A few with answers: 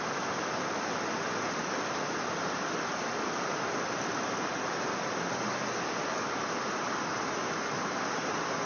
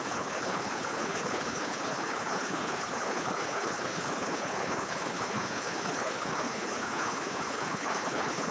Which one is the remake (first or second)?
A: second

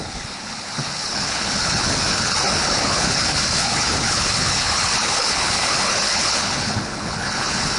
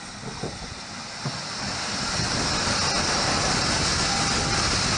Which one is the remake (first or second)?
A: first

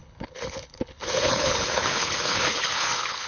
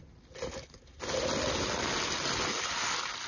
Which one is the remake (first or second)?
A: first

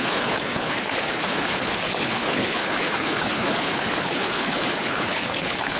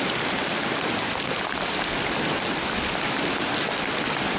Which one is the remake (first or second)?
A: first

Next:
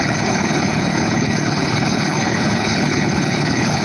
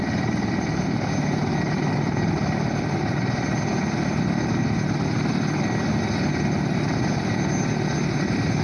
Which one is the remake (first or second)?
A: first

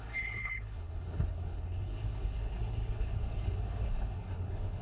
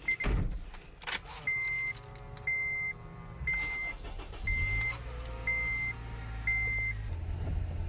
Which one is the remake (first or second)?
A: first